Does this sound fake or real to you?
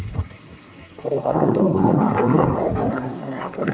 fake